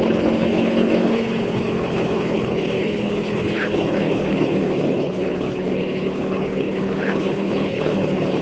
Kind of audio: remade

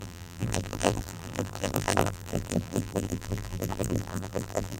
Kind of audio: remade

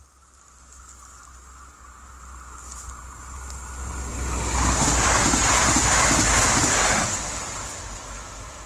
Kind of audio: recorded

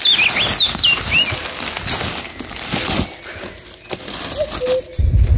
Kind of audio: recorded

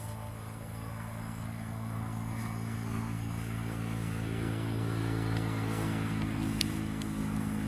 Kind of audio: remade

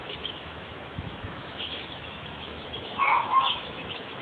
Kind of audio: remade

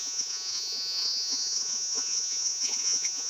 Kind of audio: remade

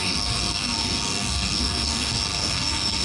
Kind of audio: remade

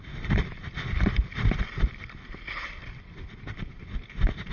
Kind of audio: recorded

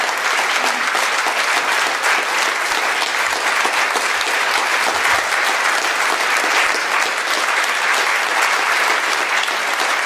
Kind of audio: recorded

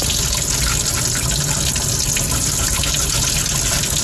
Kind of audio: recorded